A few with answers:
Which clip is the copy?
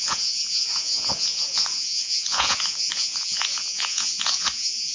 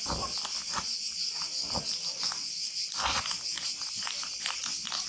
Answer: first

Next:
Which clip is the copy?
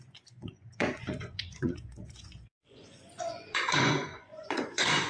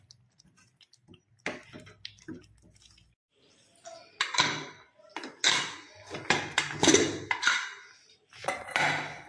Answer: first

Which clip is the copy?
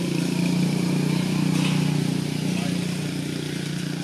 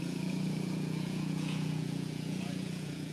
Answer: second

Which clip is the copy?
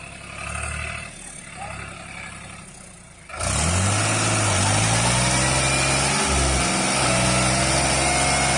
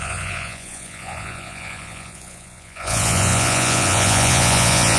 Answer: second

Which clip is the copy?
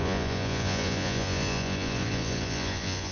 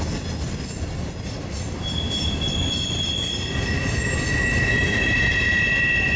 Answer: first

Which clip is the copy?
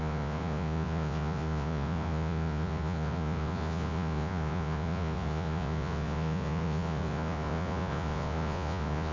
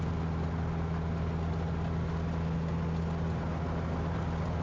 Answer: first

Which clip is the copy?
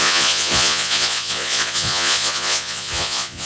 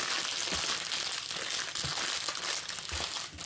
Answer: first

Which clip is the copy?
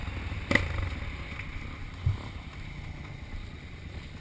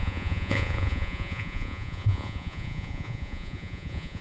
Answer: second